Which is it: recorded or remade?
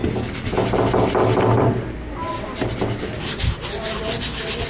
recorded